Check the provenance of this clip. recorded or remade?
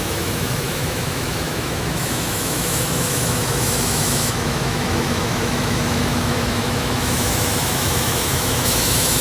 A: remade